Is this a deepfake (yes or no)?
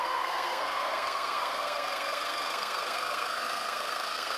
yes